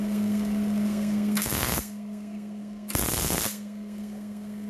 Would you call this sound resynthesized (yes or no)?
yes